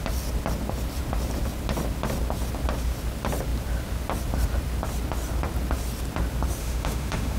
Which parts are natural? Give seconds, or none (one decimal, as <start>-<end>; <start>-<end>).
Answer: 0.0-6.6